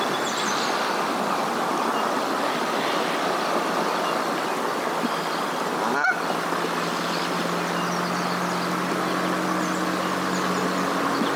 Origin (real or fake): real